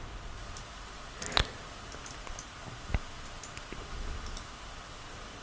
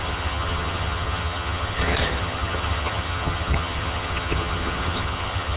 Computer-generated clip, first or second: second